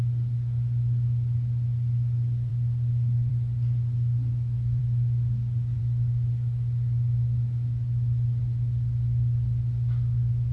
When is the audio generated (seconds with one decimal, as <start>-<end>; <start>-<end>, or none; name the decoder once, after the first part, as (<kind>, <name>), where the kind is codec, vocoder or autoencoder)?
none